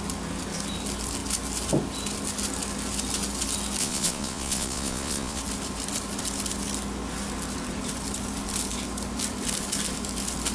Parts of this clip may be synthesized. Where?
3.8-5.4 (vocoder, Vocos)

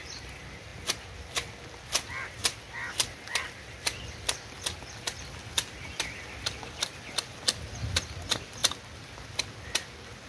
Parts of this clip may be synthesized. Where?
none

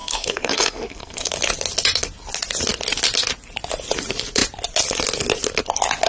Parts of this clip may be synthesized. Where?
0.0-1.3 (codec, SNAC)

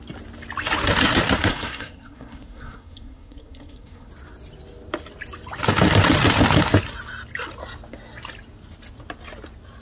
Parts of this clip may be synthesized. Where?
1.5-4.1 (codec, SNAC)

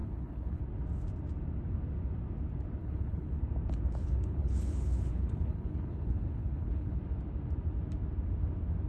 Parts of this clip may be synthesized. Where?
0.0-0.6 (codec, HILCodec); 2.8-3.4; 4.0-7.0